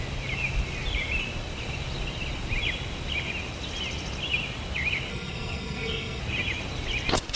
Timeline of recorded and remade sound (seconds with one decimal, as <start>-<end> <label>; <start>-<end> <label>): 0.0-5.1 recorded; 5.1-6.2 remade; 6.2-7.4 recorded